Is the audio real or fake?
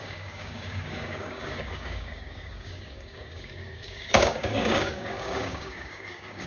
fake